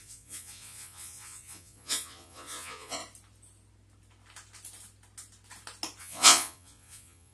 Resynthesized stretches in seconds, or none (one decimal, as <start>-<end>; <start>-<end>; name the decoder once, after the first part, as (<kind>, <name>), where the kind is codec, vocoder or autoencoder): 0.0-3.0 (vocoder, Vocos); 6.0-7.3